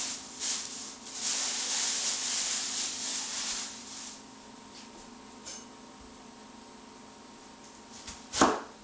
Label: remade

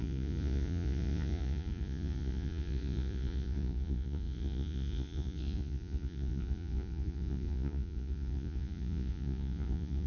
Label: remade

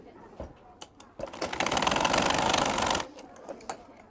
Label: recorded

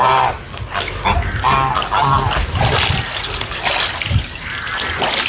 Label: recorded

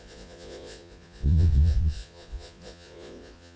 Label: remade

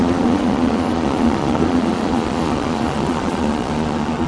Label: remade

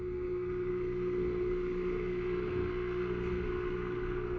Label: remade